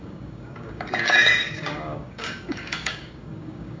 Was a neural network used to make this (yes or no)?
yes